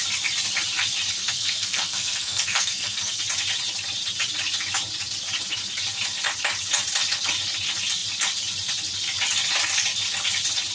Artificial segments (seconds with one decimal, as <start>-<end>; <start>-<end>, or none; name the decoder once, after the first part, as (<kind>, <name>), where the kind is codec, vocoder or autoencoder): 1.2-3.2 (codec, SNAC)